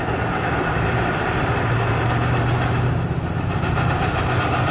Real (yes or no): yes